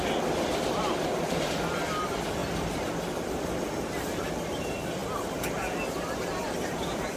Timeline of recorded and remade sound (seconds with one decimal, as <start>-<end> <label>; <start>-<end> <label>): 0.0-2.4 remade; 2.4-4.5 recorded; 4.5-5.0 remade; 5.0-6.6 recorded; 6.6-7.2 remade